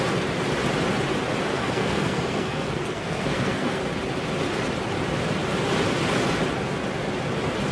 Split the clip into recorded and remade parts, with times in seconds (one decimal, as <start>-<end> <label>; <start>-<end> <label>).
0.0-1.5 recorded; 1.5-3.8 remade; 3.8-7.7 recorded